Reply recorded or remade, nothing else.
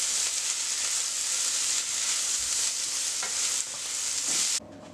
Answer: recorded